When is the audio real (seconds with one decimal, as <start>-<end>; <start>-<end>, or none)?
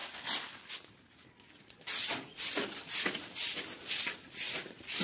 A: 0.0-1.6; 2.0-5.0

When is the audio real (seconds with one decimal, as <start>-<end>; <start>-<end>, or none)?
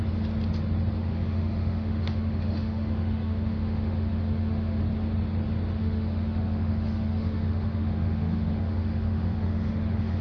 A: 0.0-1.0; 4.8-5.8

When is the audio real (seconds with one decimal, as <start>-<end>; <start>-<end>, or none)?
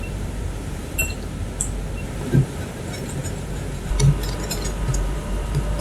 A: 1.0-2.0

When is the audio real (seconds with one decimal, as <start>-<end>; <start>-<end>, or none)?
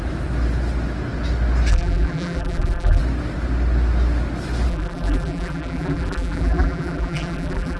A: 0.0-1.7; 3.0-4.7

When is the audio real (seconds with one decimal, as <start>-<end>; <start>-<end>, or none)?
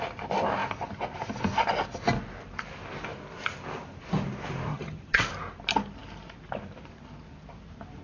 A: 0.0-4.7; 5.2-8.0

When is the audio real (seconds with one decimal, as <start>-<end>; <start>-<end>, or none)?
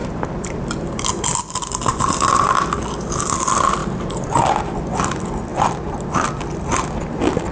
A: 0.6-3.8; 4.4-7.5